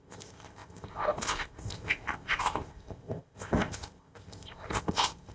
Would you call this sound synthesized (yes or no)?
yes